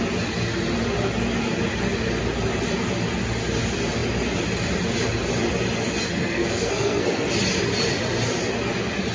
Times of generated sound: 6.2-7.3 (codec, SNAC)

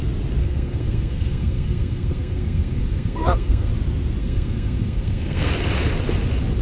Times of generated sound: 0.4-3.7 (codec, SNAC); 4.2-5.5

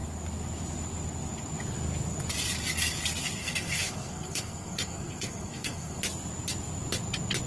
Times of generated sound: 3.4-6.0 (codec, SNAC)

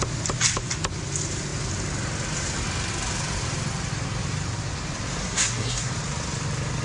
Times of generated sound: 5.2-5.9 (codec, SNAC)

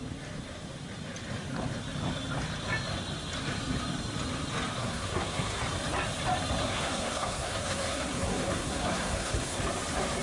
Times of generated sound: 4.8-5.6 (codec, SNAC); 6.6-9.6

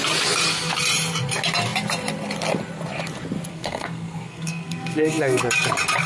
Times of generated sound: 3.5-5.4 (codec, SNAC)

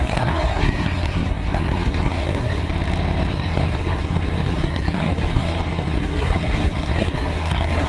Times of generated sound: 0.0-2.7 (codec, SNAC); 3.3-7.9